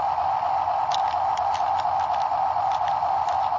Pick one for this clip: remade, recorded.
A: recorded